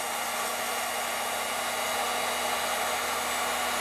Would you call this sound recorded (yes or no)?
yes